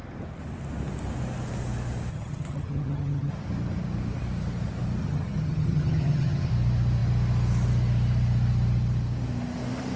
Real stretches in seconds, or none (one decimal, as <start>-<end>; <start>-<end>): 0.0-2.1; 3.3-5.0; 6.5-10.0